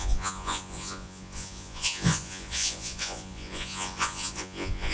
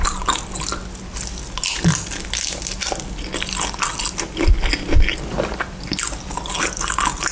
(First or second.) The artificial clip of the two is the first